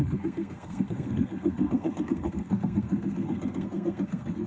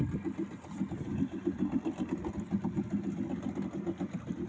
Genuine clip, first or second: second